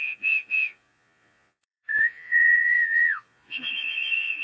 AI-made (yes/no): yes